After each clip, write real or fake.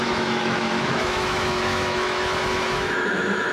fake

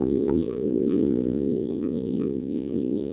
fake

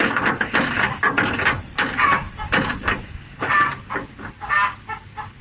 real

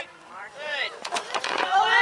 fake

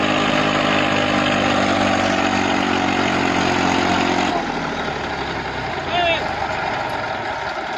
real